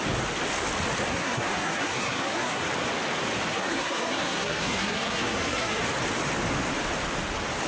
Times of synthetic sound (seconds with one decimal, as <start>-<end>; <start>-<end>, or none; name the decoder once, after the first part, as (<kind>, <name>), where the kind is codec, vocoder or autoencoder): 1.1-2.6 (codec, SNAC); 3.5-5.8